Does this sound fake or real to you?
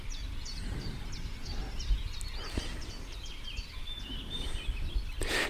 real